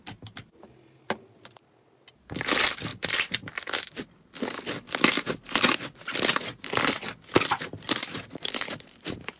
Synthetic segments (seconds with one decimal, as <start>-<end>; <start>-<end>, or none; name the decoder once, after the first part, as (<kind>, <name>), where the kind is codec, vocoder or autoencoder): none

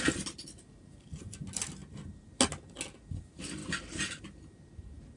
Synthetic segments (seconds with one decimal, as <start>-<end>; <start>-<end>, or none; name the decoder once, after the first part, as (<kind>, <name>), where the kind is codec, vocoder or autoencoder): none

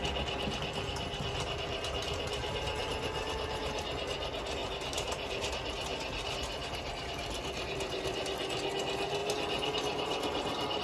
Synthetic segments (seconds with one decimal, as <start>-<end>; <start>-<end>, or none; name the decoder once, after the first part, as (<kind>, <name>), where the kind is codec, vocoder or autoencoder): 4.6-5.5 (vocoder, BigVGAN v2); 5.9-6.9; 9.2-10.8

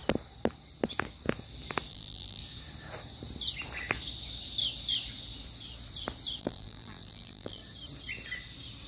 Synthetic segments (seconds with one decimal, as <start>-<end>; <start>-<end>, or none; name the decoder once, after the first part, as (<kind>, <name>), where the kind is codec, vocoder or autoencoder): 1.9-2.4 (vocoder, BigVGAN v2); 6.4-7.6

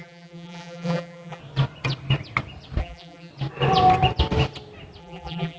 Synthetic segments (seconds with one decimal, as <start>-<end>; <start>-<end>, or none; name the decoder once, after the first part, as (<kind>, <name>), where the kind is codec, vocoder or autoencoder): 0.0-1.4 (vocoder, BigVGAN v2); 2.8-3.3; 5.0-5.6

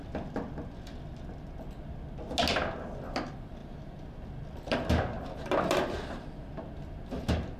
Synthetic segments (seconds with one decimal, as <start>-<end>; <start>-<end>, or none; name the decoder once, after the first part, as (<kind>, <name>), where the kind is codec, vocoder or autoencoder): none

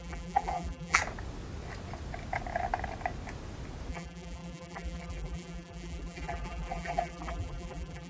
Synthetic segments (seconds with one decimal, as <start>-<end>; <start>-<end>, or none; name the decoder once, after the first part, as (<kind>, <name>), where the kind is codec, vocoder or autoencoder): 0.0-1.0 (vocoder, BigVGAN v2); 3.9-8.1